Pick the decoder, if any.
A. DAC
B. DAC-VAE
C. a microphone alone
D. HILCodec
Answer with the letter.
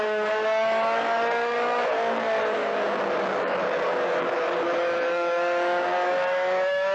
A